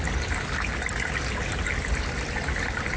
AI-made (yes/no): no